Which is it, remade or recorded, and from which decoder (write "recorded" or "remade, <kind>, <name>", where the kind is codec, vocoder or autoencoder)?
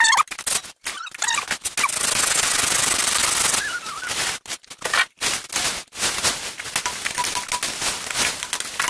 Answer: recorded